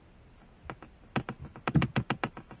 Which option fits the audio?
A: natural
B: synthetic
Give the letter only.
A